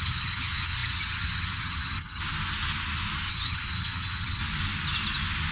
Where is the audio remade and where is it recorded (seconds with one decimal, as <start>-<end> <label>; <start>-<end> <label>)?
0.0-2.2 remade; 2.2-3.3 recorded; 3.3-4.4 remade; 4.4-5.5 recorded